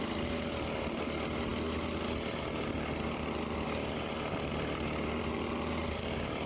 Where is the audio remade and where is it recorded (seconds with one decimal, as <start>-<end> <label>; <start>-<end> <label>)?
0.0-6.5 recorded